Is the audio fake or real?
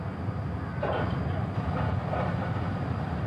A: real